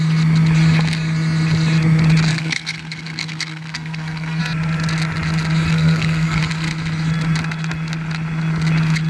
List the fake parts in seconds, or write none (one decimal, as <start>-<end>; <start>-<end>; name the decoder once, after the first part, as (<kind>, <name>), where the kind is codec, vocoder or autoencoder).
2.3-4.4 (codec, SNAC); 5.7-6.4